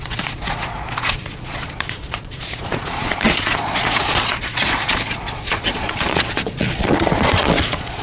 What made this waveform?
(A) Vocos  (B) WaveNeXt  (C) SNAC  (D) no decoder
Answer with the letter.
A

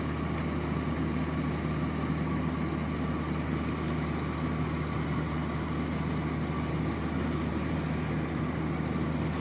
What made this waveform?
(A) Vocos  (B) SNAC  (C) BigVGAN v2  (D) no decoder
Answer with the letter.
D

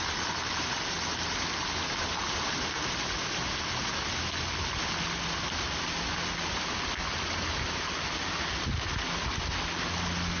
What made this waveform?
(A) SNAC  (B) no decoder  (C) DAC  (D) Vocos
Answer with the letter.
B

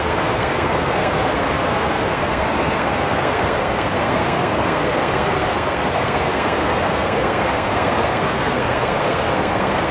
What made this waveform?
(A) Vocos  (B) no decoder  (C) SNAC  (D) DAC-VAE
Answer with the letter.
C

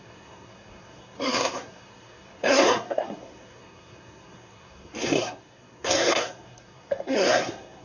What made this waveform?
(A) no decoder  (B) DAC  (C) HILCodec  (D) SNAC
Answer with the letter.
D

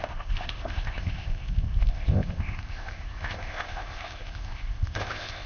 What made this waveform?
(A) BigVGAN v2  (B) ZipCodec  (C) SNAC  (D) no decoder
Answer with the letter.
B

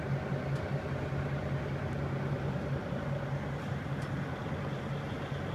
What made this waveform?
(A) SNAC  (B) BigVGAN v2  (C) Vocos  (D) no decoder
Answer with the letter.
D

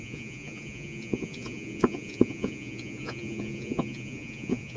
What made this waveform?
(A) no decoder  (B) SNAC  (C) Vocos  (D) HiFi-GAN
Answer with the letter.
C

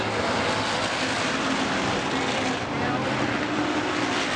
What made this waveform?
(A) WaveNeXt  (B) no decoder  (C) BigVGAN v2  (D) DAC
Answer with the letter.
B